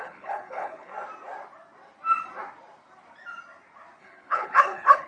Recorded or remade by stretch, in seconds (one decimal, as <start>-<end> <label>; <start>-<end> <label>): 0.0-0.9 remade; 0.9-4.0 recorded; 4.0-5.1 remade